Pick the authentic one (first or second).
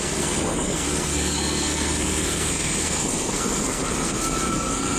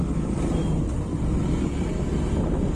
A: second